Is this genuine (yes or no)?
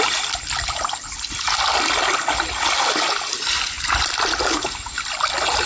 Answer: yes